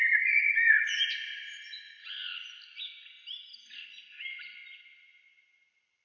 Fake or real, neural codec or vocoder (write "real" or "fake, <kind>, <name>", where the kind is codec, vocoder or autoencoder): real